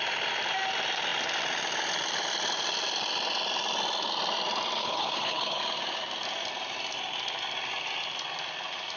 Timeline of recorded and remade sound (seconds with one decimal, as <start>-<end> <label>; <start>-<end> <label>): 0.0-4.8 recorded; 4.8-5.6 remade; 5.6-9.0 recorded